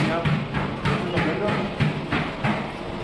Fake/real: real